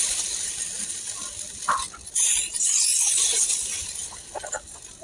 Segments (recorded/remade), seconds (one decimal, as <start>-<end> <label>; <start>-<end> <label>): 0.0-5.0 recorded

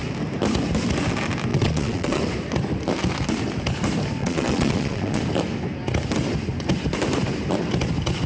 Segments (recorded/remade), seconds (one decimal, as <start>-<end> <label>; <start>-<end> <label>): 0.0-1.5 recorded; 1.5-2.2 remade; 2.2-4.2 recorded; 4.2-5.2 remade; 5.2-8.3 recorded